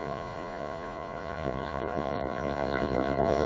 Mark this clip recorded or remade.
remade